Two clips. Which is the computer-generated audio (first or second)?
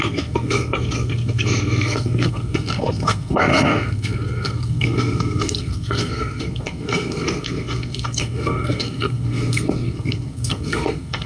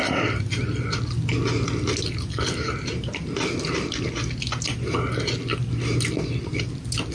first